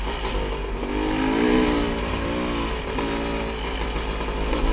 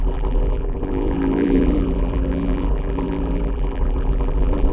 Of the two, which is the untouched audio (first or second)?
first